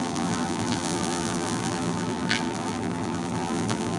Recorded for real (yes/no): no